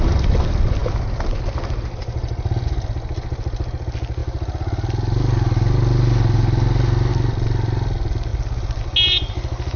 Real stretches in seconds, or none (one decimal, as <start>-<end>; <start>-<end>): 0.0-9.8